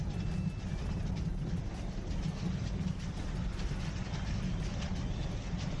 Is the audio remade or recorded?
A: recorded